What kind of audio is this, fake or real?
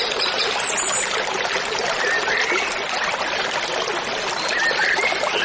real